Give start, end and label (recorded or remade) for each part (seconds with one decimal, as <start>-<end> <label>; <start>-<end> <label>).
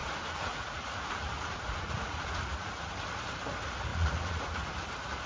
0.0-2.7 remade; 2.7-3.9 recorded; 3.9-4.7 remade; 4.7-5.3 recorded